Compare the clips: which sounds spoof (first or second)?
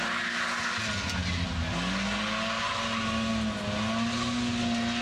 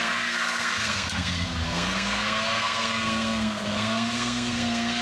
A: second